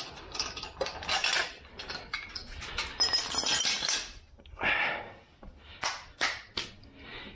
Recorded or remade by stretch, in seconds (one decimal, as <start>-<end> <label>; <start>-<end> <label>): 0.0-1.2 recorded; 1.2-2.3 remade; 2.3-7.4 recorded